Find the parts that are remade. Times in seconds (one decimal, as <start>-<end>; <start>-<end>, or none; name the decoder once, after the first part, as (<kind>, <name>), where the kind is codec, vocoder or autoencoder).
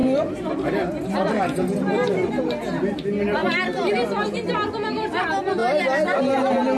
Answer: none